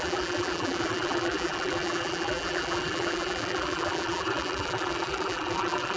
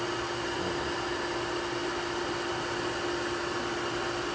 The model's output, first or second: first